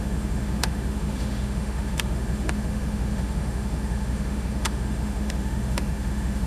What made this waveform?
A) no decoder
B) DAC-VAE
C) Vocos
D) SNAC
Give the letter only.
B